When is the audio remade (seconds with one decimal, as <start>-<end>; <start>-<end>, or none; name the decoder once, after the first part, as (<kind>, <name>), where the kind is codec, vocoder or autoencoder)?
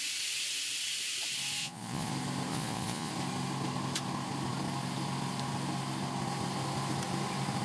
1.6-2.1 (vocoder, Vocos); 2.5-3.1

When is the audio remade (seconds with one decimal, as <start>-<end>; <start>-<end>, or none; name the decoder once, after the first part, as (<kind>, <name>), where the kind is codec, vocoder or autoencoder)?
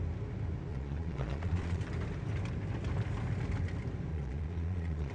0.7-1.8 (vocoder, Vocos); 4.1-5.1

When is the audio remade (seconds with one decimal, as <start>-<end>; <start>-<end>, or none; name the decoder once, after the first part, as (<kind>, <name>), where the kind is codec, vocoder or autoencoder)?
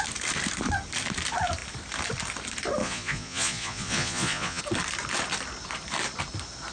2.8-4.6 (vocoder, Vocos)